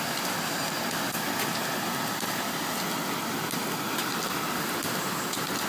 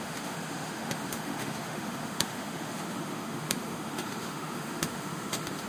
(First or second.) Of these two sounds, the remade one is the second